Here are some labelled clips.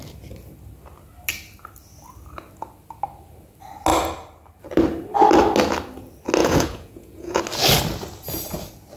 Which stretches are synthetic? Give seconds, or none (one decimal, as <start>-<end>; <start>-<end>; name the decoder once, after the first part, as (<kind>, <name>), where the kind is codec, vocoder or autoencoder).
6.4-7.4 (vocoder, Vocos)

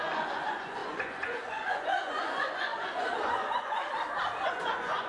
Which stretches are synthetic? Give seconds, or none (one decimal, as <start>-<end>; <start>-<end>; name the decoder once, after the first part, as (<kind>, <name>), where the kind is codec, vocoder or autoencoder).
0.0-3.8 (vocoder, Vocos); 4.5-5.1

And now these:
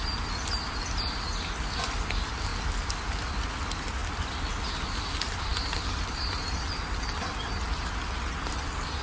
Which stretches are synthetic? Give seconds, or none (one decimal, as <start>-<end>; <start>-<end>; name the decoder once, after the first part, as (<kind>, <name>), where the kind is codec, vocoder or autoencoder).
none

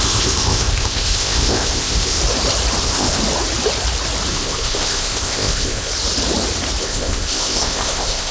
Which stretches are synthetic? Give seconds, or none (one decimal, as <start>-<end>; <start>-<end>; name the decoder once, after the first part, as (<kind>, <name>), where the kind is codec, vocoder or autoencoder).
0.0-2.2 (codec, ZipCodec); 2.8-3.2; 4.3-5.9; 6.8-8.3

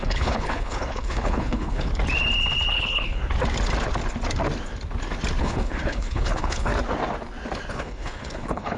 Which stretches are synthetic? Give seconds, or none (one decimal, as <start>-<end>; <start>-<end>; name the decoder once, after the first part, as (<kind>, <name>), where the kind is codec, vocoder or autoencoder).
0.0-1.9 (codec, HILCodec); 2.7-3.2; 5.4-6.7; 7.7-8.8

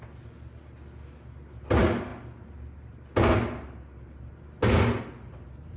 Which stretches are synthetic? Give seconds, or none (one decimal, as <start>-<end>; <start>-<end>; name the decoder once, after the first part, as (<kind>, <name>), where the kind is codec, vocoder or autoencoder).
none

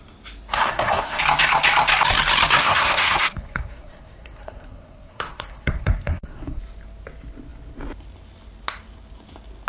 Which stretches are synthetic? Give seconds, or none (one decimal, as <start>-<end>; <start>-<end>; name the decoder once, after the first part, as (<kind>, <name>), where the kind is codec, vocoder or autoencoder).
0.6-1.2 (codec, SNAC); 2.6-6.6

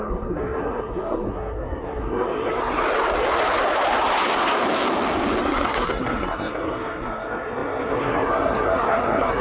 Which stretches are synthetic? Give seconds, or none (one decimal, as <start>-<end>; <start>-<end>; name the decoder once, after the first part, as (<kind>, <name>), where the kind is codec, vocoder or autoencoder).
0.0-2.8 (codec, SNAC); 5.4-9.4